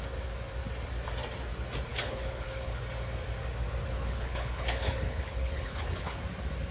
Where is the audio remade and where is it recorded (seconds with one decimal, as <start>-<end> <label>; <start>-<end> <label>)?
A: 0.0-1.9 recorded; 1.9-2.8 remade; 2.8-3.8 recorded; 3.8-6.2 remade; 6.2-6.7 recorded